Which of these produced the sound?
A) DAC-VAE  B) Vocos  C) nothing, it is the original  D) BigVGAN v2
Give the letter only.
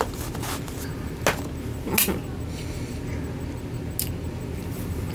C